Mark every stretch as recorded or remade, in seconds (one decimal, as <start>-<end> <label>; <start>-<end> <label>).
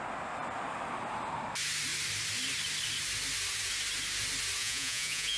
0.0-4.6 recorded; 4.6-5.4 remade